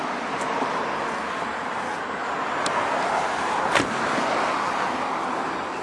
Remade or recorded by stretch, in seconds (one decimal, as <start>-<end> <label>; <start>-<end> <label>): 0.0-5.8 recorded